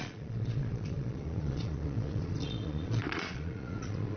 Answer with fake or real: fake